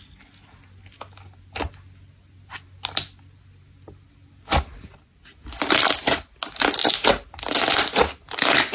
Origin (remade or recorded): recorded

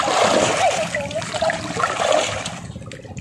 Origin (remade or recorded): recorded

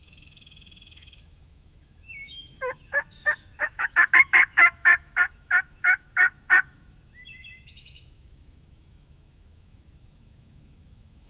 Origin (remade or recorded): remade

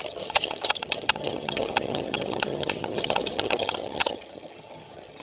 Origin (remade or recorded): remade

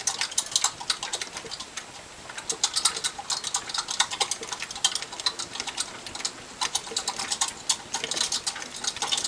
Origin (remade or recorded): recorded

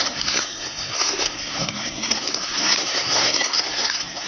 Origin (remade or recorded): remade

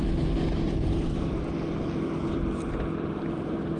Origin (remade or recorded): recorded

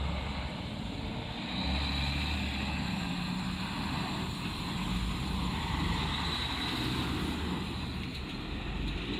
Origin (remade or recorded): recorded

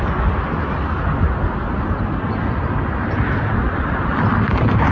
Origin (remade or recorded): recorded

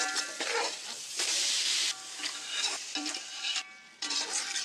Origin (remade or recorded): remade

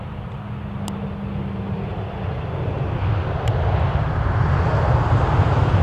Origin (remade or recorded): recorded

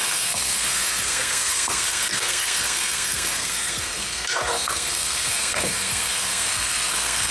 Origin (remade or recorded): remade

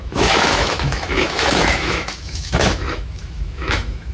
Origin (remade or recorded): remade